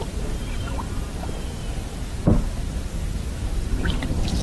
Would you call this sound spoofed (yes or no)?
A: yes